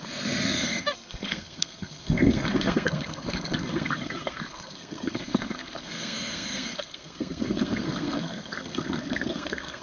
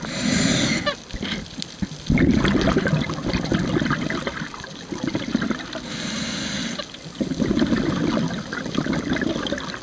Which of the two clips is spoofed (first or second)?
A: first